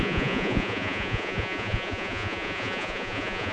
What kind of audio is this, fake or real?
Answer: fake